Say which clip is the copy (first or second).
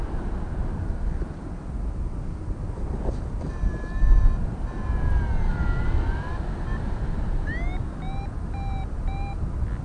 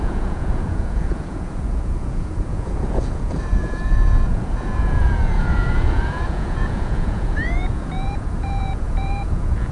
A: second